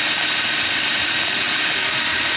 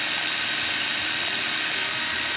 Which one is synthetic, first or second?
first